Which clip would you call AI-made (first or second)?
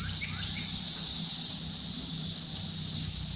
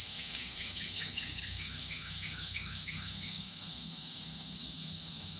second